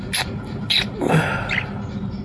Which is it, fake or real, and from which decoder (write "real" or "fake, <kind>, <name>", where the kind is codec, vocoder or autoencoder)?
real